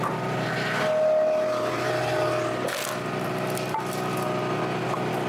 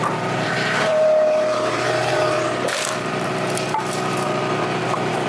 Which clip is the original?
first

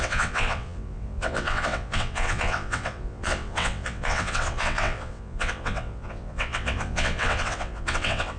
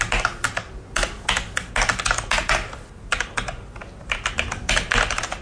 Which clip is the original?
second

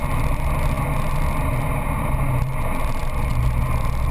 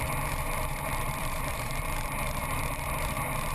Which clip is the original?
first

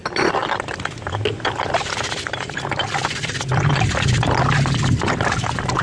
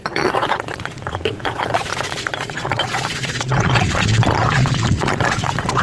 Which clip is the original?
first